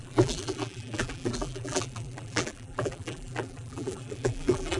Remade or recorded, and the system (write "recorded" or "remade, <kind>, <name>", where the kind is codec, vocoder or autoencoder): remade, vocoder, BigVGAN v2